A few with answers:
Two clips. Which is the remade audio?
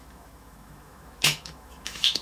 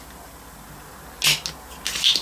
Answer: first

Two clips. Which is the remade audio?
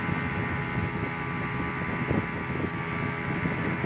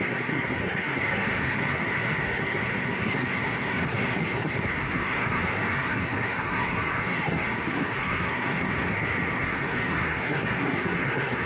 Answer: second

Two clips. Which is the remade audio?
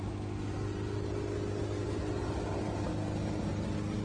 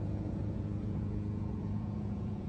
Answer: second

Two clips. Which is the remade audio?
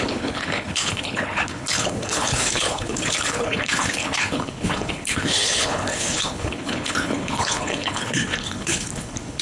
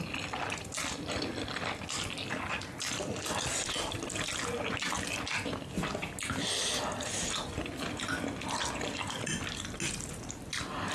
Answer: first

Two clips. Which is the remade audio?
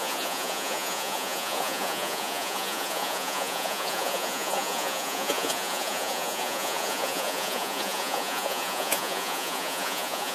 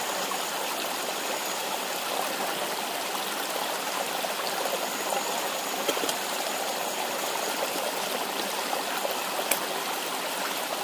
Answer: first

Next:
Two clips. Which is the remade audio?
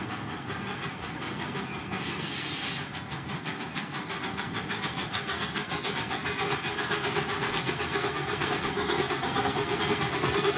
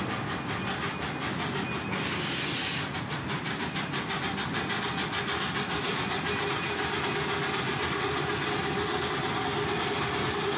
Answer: first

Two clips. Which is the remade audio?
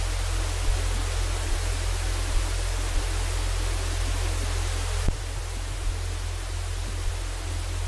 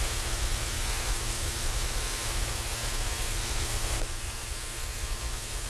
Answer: second